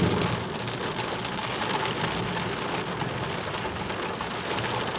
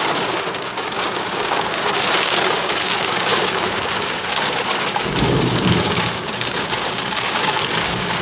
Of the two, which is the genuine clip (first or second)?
first